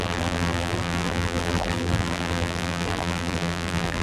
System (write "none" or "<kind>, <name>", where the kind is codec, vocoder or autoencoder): vocoder, BigVGAN v2